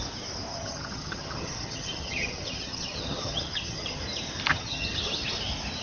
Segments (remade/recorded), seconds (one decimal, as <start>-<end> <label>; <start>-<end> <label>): 0.0-0.5 recorded; 0.5-4.0 remade; 4.0-4.5 recorded; 4.5-5.2 remade; 5.2-5.8 recorded

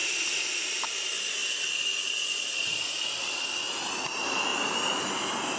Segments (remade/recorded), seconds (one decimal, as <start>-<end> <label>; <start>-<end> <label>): 0.0-5.6 recorded

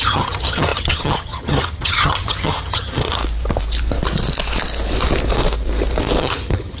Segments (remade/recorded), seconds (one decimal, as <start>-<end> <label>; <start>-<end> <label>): 0.0-3.2 remade; 3.2-6.2 recorded; 6.2-6.8 remade

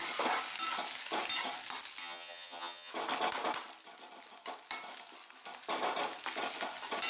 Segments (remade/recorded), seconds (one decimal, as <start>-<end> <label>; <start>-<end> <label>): 0.0-2.0 recorded; 2.0-2.9 remade; 2.9-7.1 recorded

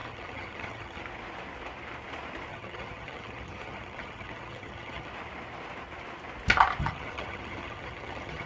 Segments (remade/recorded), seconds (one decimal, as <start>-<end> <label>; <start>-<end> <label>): 0.0-1.0 remade; 1.0-2.5 recorded; 2.5-5.1 remade; 5.1-6.8 recorded; 6.8-8.5 remade

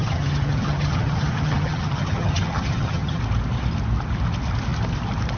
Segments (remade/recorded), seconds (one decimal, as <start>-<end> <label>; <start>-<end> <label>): 0.0-3.2 remade; 3.2-5.4 recorded